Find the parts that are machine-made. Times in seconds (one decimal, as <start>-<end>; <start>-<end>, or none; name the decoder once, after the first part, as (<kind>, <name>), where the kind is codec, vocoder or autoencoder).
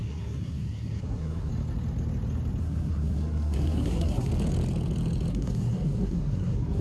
0.0-1.5 (codec, SNAC); 2.6-4.3; 5.3-6.8